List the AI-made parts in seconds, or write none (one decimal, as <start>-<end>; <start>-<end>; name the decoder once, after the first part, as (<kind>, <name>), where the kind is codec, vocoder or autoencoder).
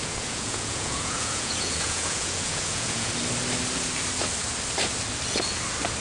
0.0-3.1 (vocoder, Vocos)